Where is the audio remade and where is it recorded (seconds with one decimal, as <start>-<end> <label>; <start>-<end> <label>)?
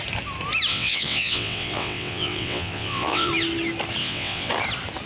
0.0-0.7 recorded; 0.7-3.3 remade; 3.3-4.0 recorded; 4.0-4.5 remade; 4.5-5.1 recorded